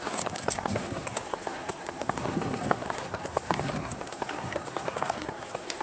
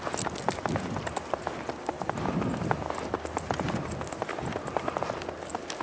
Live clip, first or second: second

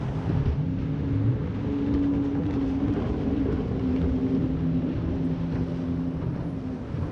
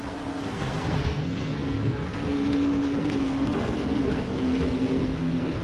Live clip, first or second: first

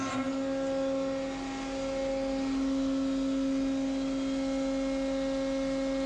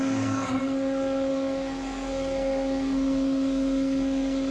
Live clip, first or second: first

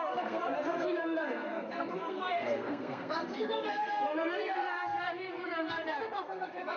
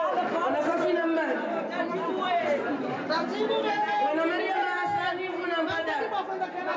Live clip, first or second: second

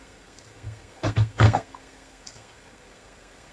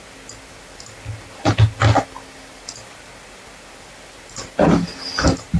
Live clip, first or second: second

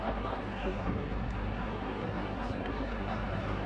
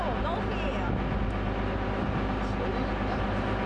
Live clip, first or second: second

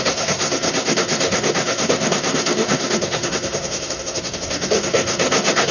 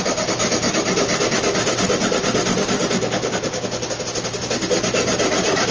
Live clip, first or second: second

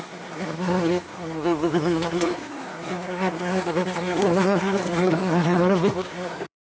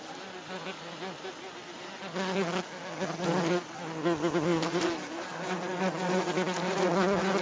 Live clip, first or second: second